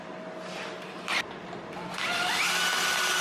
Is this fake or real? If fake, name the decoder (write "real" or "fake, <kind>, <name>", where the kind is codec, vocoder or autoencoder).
real